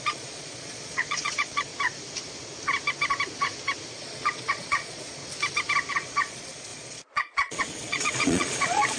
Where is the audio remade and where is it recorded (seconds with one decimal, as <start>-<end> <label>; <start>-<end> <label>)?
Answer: 0.0-1.7 remade; 1.7-4.0 recorded; 4.0-5.2 remade; 5.2-5.9 recorded; 5.9-9.0 remade